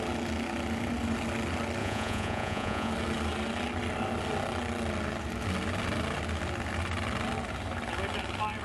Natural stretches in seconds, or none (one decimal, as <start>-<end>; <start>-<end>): 0.0-1.8; 2.9-8.6